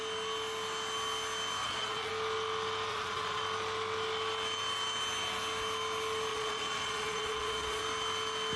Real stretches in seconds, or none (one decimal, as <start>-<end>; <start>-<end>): 0.0-1.6; 2.1-2.9; 3.4-6.3; 7.8-8.6